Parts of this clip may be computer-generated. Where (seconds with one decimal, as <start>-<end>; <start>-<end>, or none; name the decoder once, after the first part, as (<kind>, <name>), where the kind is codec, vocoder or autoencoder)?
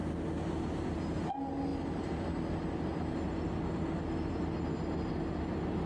none